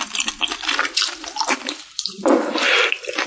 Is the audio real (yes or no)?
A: no